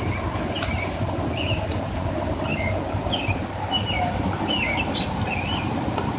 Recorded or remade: recorded